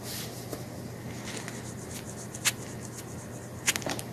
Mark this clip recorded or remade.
recorded